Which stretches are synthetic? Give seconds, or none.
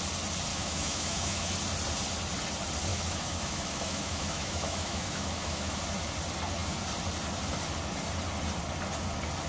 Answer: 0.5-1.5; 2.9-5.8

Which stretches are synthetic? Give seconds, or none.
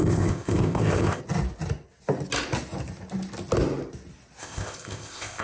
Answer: 0.0-1.2; 4.4-5.4